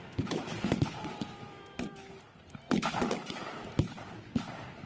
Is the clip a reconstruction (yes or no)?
no